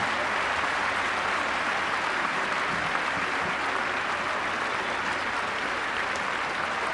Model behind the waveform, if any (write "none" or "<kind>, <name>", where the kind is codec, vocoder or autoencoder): none